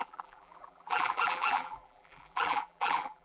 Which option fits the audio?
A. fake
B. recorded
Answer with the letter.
A